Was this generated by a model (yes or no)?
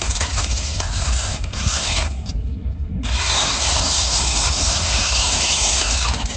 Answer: yes